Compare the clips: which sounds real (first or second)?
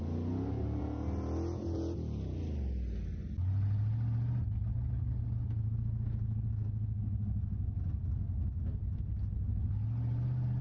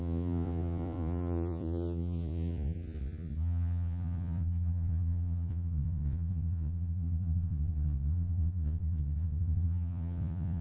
first